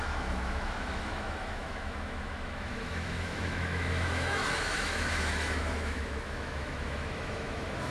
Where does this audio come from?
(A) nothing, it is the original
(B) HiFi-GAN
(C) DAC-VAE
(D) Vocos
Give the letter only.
C